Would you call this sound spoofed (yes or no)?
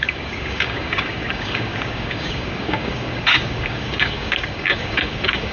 yes